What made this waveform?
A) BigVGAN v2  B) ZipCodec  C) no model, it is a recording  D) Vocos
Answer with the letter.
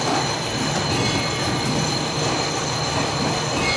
A